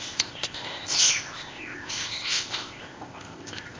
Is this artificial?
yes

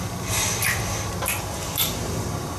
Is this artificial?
no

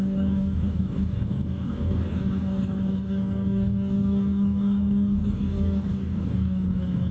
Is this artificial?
yes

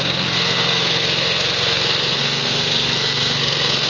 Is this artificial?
yes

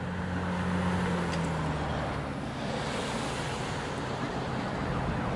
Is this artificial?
no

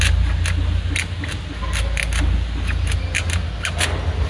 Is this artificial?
no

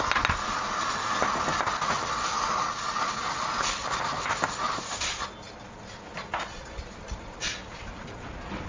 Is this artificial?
no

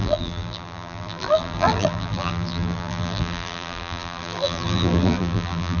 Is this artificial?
yes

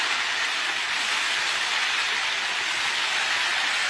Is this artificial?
no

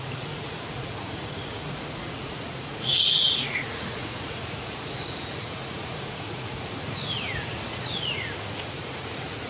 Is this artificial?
yes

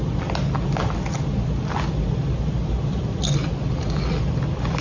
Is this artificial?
no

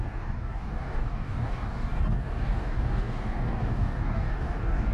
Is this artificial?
yes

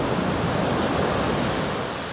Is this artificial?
no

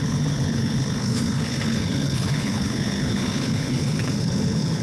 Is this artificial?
yes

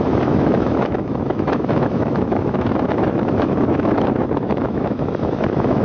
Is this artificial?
yes